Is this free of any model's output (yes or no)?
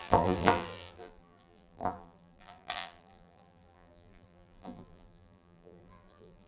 no